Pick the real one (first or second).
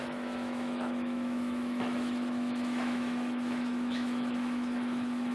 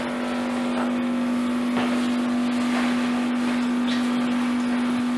second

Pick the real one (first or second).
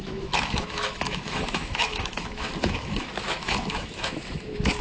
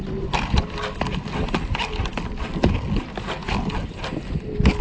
second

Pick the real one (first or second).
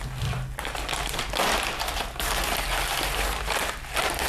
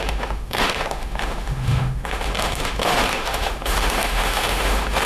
first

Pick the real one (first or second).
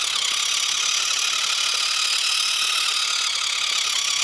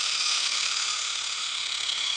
first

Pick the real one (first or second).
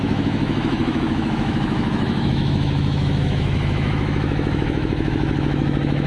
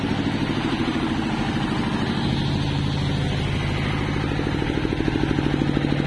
second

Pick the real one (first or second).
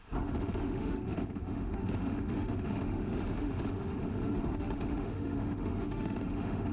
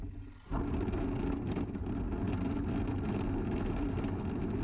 second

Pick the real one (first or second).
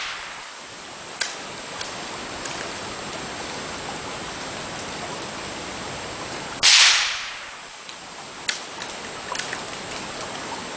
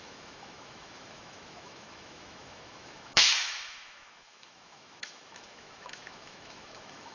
first